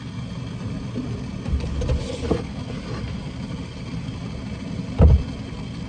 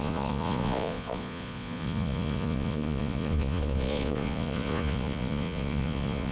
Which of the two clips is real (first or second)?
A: first